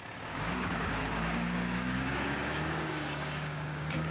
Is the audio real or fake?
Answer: fake